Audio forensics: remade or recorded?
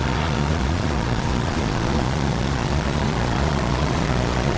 remade